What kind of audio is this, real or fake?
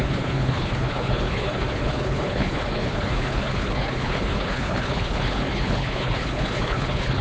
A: fake